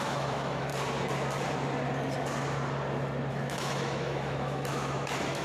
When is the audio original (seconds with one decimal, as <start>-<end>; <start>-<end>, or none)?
0.7-3.3